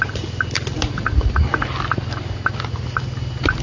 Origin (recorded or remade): recorded